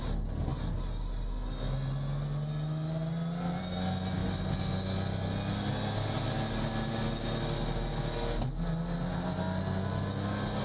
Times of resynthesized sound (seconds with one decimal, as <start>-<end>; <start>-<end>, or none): none